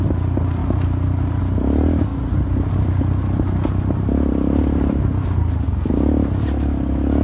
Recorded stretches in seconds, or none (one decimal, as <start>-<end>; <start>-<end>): 0.0-7.2